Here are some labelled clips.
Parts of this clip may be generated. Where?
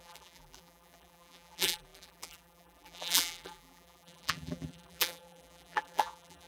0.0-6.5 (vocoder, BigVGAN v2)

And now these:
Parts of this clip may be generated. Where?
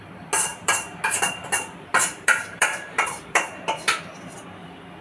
0.5-1.0 (vocoder, BigVGAN v2); 1.9-3.4